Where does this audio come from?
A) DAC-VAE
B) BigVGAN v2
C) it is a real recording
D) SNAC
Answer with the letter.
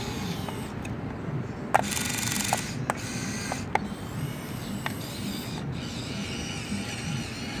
C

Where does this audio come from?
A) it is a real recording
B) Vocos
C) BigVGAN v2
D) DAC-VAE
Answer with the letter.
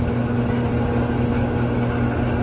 A